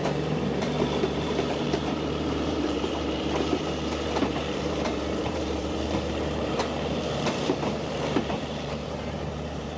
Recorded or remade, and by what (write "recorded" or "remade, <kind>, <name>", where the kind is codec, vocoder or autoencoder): remade, vocoder, BigVGAN v2